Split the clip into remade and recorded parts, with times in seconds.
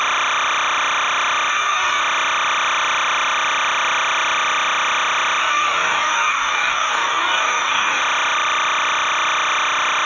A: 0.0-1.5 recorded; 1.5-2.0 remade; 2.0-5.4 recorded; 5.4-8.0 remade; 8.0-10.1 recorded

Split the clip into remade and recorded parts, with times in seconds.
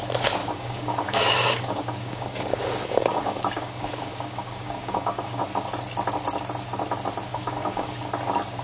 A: 0.0-0.4 recorded; 0.4-5.4 remade; 5.4-7.3 recorded; 7.3-8.0 remade; 8.0-8.6 recorded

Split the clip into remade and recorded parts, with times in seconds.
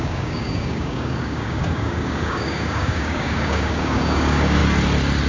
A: 0.0-4.6 remade; 4.6-5.3 recorded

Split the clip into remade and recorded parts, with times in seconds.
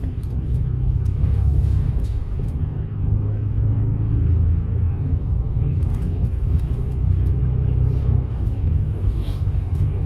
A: 0.0-7.4 remade; 7.4-8.0 recorded; 8.0-10.1 remade